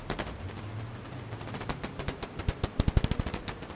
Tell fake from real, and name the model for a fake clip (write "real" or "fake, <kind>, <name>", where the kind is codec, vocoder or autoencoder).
fake, vocoder, BigVGAN v2